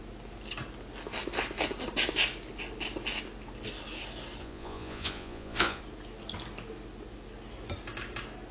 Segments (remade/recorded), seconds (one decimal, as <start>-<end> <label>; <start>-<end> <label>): 0.0-4.4 recorded; 4.4-5.8 remade; 5.8-8.5 recorded